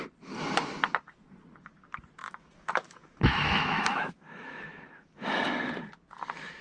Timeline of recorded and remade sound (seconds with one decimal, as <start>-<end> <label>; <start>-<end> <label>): 0.0-2.2 recorded; 2.2-5.5 remade; 5.5-6.6 recorded